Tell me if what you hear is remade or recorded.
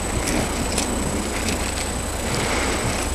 recorded